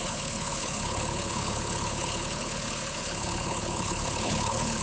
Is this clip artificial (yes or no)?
yes